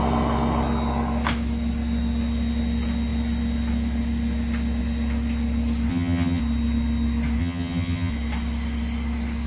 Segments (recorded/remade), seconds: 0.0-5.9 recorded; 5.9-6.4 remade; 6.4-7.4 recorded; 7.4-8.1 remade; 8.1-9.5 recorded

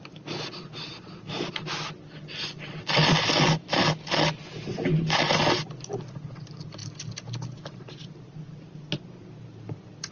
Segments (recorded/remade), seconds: 0.0-10.1 recorded

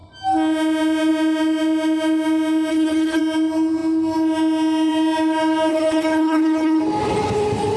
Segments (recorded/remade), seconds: 0.0-2.7 recorded; 2.7-3.2 remade; 3.2-5.7 recorded; 5.7-6.8 remade; 6.8-7.8 recorded